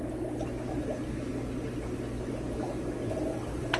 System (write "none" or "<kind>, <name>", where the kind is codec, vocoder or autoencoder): none